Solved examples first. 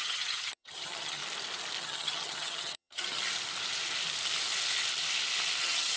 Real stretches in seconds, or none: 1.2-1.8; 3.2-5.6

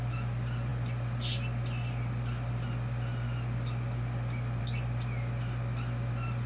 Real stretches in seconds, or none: 0.0-6.5

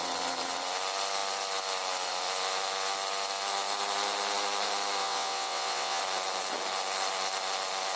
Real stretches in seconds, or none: 0.0-5.0; 6.0-8.0